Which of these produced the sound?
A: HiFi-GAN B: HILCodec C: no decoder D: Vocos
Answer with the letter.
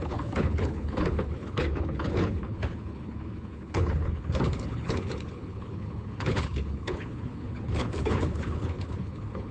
B